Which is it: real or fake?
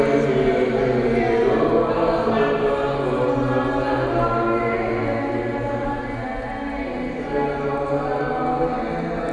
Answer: real